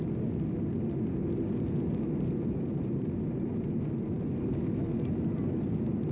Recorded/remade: recorded